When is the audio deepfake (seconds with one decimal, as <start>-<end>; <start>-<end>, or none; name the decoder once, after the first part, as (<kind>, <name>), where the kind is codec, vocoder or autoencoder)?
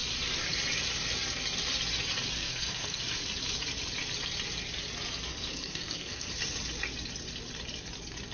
2.4-3.0 (codec, SNAC); 5.3-6.3